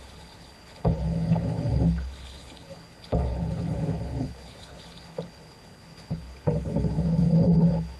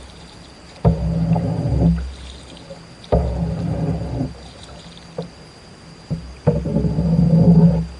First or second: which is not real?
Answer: first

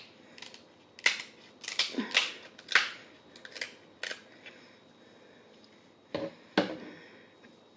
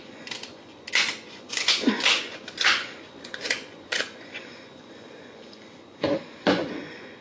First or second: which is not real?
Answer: second